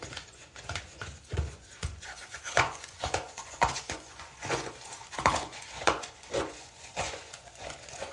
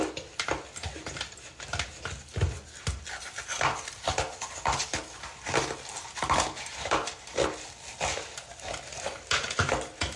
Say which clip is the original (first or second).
second